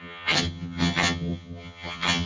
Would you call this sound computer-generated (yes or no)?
yes